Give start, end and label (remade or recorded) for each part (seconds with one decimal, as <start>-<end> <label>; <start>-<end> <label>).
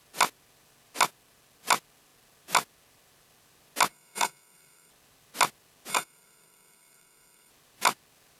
0.0-3.9 recorded; 3.9-4.9 remade; 4.9-5.9 recorded; 5.9-7.5 remade; 7.5-8.4 recorded